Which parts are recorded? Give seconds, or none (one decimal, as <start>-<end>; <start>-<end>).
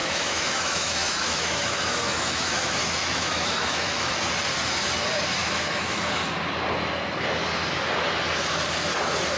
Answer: 4.1-5.4; 6.1-9.4